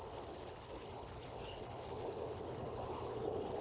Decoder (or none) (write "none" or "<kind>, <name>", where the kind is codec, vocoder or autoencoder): codec, HILCodec